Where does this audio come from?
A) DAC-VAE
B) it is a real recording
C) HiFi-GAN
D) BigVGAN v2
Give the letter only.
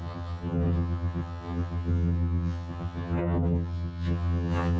C